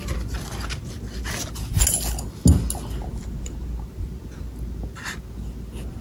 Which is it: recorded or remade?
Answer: recorded